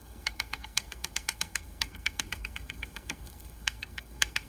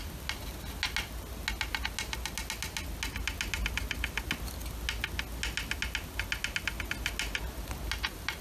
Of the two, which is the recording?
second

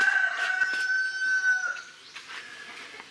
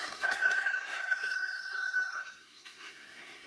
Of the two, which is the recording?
first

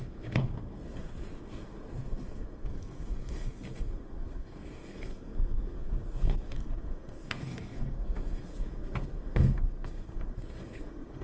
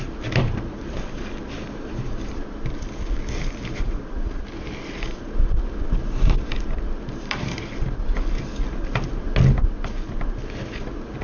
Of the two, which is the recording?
second